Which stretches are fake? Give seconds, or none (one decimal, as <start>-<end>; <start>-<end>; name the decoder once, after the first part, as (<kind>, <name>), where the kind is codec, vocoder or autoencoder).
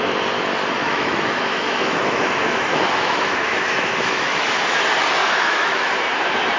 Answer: 0.8-4.8 (autoencoder, DAC-VAE); 5.2-5.9